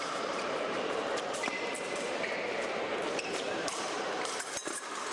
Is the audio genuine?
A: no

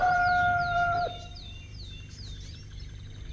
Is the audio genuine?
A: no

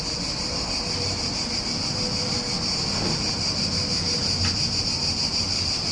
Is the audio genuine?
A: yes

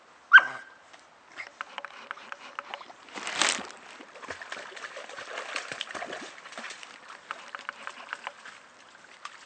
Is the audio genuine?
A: yes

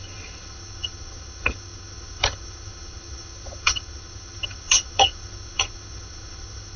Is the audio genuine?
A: no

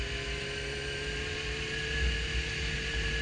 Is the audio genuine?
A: yes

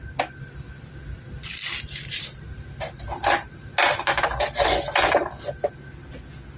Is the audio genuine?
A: yes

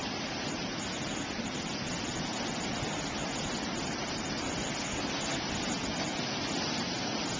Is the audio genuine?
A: yes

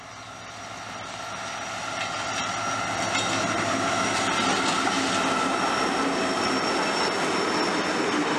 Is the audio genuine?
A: yes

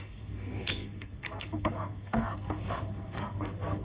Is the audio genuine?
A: no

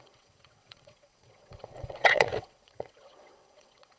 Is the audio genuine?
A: no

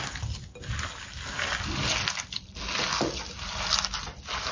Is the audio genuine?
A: yes